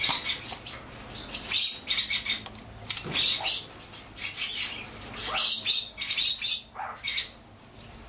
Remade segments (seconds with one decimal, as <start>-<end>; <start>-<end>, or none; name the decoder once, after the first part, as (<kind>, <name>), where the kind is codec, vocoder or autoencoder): none